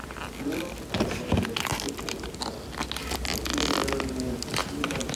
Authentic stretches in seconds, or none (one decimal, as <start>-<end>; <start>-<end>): 0.0-5.2